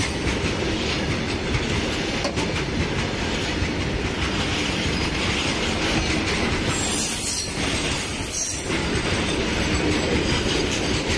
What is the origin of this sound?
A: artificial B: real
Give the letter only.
B